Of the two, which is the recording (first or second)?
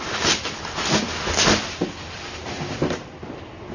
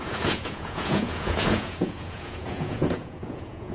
first